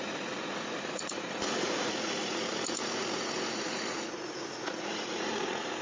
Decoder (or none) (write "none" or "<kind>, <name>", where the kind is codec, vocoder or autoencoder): vocoder, Vocos